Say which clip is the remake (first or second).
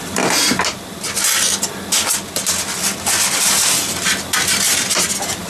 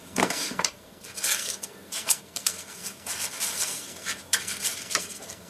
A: second